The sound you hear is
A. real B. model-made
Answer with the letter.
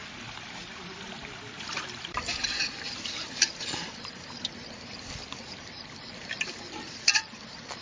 B